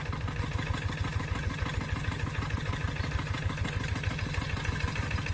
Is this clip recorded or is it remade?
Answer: recorded